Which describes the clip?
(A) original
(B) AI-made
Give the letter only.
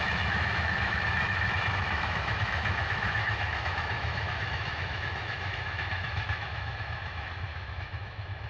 B